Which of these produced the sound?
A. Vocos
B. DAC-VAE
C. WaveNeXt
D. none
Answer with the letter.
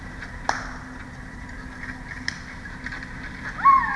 D